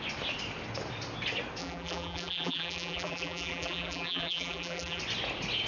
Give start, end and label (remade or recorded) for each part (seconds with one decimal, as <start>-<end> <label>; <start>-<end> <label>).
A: 0.0-1.6 recorded; 1.6-5.0 remade; 5.0-5.7 recorded

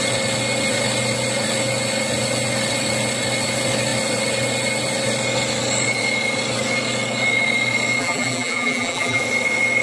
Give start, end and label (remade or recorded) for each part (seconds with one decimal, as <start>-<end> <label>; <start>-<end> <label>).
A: 0.0-8.0 recorded; 8.0-9.2 remade; 9.2-9.8 recorded

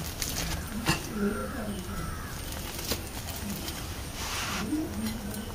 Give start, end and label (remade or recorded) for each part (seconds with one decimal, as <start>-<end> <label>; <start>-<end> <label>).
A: 0.0-5.5 recorded

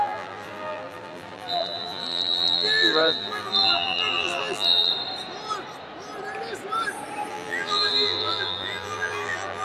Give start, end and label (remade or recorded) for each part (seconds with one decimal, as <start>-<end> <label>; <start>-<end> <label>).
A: 0.0-4.9 remade; 4.9-7.3 recorded; 7.3-9.6 remade

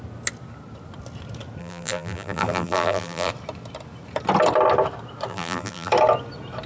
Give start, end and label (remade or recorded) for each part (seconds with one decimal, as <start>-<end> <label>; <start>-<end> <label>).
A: 0.0-1.6 recorded; 1.6-3.3 remade; 3.3-5.3 recorded; 5.3-5.9 remade; 5.9-6.7 recorded

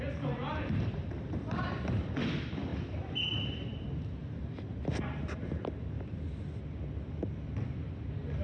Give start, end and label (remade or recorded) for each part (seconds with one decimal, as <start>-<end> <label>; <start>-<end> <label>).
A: 0.0-0.5 recorded; 0.5-2.0 remade; 2.0-2.7 recorded; 2.7-6.2 remade; 6.2-8.4 recorded

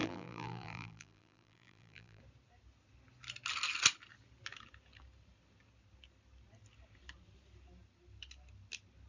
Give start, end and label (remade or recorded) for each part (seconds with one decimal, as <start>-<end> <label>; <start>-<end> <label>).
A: 0.0-2.2 remade; 2.2-9.1 recorded